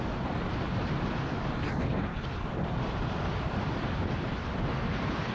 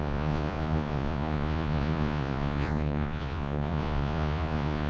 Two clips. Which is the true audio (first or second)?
first